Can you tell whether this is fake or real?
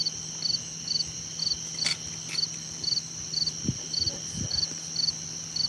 real